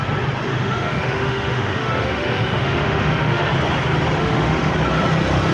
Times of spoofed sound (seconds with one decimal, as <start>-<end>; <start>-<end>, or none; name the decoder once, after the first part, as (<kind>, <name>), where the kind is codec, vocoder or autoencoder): 0.5-3.5 (autoencoder, DAC-VAE); 4.2-4.7